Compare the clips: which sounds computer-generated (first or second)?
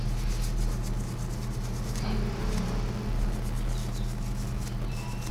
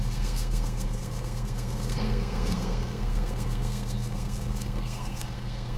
second